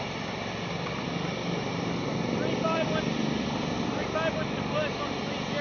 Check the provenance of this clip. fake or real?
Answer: real